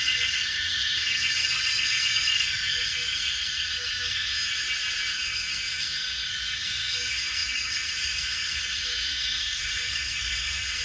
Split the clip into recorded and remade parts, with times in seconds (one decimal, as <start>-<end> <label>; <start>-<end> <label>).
0.0-4.3 remade; 4.3-5.1 recorded; 5.1-10.8 remade